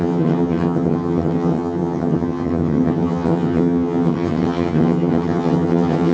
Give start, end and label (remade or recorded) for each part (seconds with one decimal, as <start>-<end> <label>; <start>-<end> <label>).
0.0-6.1 remade